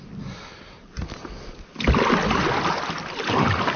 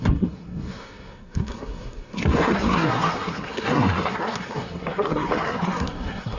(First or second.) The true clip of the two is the first